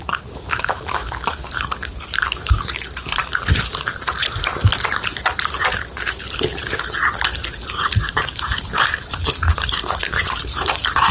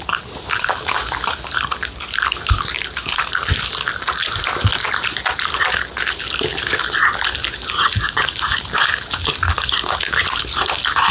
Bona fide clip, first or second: second